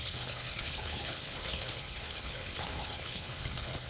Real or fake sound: fake